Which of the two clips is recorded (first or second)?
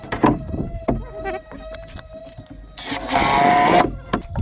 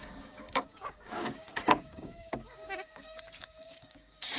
first